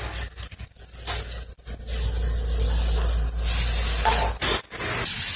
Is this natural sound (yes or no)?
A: yes